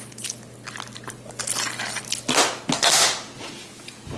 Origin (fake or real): real